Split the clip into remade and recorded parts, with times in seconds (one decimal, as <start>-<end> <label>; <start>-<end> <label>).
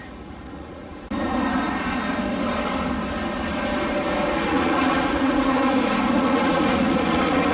0.0-0.9 remade; 0.9-4.5 recorded; 4.5-5.6 remade; 5.6-6.1 recorded; 6.1-7.5 remade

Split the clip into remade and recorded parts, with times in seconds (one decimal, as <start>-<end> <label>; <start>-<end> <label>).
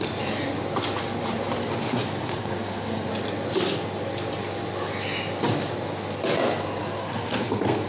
0.0-1.8 recorded; 1.8-3.1 remade; 3.1-7.0 recorded; 7.0-7.9 remade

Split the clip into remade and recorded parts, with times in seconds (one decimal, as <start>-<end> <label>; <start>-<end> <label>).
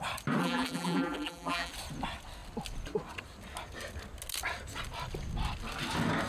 0.0-0.4 recorded; 0.4-1.7 remade; 1.7-6.3 recorded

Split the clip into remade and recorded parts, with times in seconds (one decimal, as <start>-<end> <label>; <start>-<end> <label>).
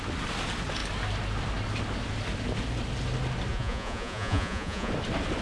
0.0-3.5 recorded; 3.5-4.9 remade; 4.9-5.4 recorded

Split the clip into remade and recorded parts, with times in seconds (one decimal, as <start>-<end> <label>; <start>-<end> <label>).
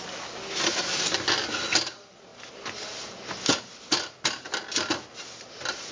0.0-5.9 recorded